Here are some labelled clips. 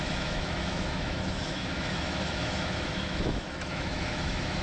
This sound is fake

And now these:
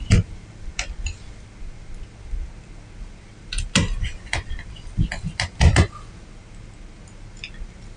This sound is real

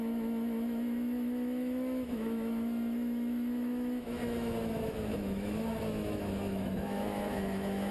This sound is fake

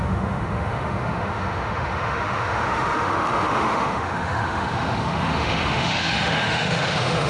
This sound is fake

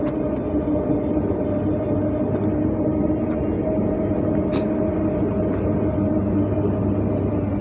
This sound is real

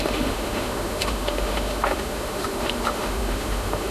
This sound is fake